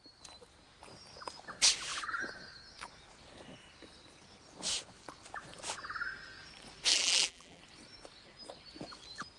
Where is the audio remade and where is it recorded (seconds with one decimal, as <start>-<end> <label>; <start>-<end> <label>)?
0.0-6.9 recorded; 6.9-7.6 remade; 7.6-9.4 recorded